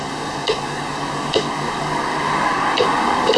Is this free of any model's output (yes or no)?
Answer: no